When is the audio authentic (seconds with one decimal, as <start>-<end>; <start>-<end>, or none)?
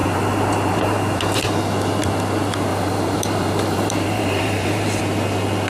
1.4-2.7; 5.0-5.7